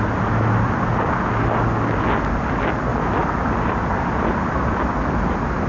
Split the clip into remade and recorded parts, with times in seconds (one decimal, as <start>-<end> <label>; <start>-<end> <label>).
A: 0.0-5.7 recorded